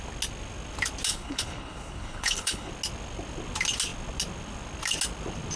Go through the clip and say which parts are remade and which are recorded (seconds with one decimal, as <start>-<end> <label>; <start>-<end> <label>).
0.0-1.1 recorded; 1.1-2.7 remade; 2.7-5.6 recorded